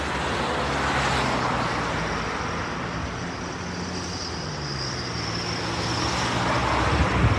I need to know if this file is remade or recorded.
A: recorded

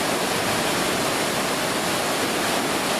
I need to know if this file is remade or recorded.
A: recorded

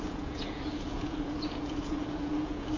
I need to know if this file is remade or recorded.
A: remade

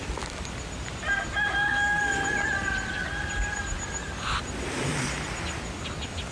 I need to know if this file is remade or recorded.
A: recorded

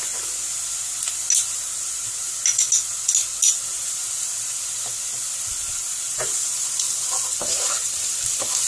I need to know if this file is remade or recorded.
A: recorded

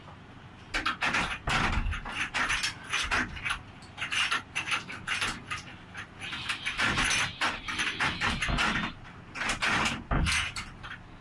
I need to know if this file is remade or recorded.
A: recorded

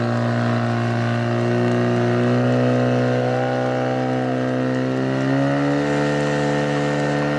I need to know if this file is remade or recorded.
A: recorded